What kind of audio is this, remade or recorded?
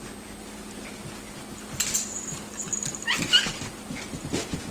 recorded